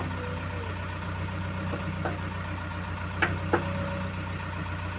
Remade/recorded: recorded